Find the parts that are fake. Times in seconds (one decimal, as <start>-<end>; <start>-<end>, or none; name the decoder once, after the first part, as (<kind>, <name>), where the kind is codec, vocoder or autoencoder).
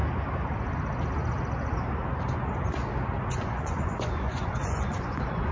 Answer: 3.3-5.5 (vocoder, Vocos)